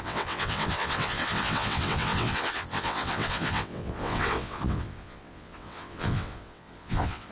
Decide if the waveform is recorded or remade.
remade